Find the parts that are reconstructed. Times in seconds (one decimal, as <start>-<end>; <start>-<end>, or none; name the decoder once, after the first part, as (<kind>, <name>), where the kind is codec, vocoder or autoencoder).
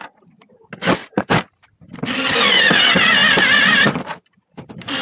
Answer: 1.0-1.6 (vocoder, BigVGAN v2); 3.2-5.0